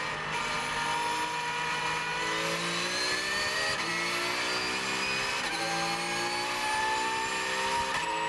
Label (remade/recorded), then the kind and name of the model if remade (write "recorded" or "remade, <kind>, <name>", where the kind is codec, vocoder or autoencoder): recorded